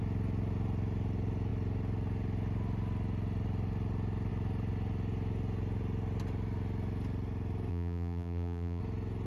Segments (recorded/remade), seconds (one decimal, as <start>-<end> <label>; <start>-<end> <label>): 0.0-7.7 recorded; 7.7-8.8 remade; 8.8-9.3 recorded